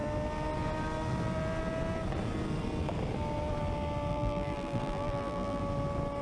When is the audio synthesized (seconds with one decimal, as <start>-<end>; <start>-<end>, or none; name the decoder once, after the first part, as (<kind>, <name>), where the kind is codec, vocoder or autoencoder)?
4.1-5.6 (vocoder, BigVGAN v2)